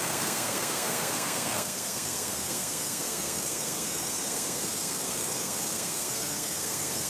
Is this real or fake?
fake